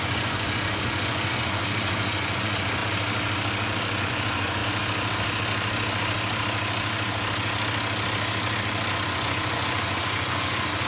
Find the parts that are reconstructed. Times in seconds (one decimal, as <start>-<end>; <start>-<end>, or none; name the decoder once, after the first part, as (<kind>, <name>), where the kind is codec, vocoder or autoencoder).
0.0-2.8 (vocoder, Vocos); 4.0-4.6; 8.9-10.9